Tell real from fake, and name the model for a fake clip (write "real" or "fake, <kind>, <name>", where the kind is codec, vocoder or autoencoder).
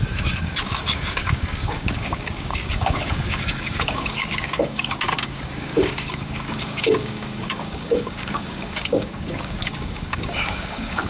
fake, codec, DAC